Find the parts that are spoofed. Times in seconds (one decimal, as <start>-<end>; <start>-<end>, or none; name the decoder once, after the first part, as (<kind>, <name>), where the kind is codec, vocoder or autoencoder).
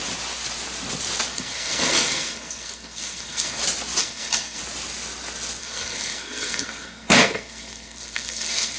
1.3-3.6 (codec, SNAC); 4.0-4.6; 5.6-8.8